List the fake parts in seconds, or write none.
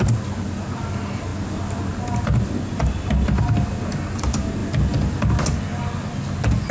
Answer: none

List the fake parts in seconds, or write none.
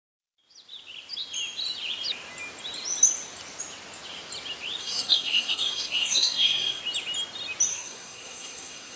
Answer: 4.8-6.8 (codec, SNAC); 7.7-9.0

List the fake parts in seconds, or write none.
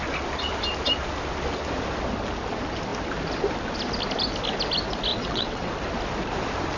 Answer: 5.1-5.7 (vocoder, WaveNeXt)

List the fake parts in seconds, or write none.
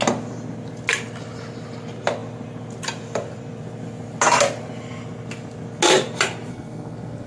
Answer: 6.5-7.3 (codec, SNAC)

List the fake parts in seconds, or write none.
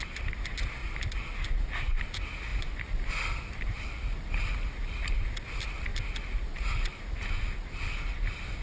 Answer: none